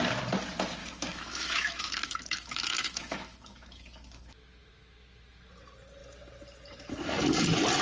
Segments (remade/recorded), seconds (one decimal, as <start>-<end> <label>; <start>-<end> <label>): 0.0-0.8 recorded; 0.8-5.5 remade; 5.5-7.8 recorded